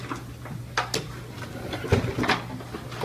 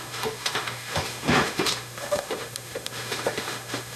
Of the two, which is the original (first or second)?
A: first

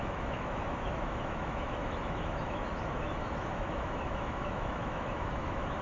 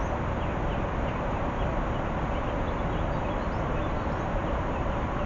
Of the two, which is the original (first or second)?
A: second